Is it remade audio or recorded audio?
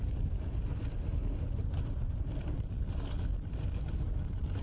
recorded